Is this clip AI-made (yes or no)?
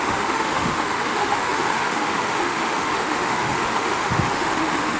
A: yes